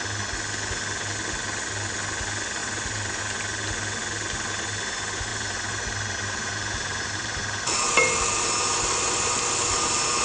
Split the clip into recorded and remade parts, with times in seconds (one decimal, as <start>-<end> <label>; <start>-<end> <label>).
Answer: 0.0-2.6 recorded; 2.6-3.2 remade; 3.2-5.3 recorded; 5.3-7.8 remade; 7.8-10.2 recorded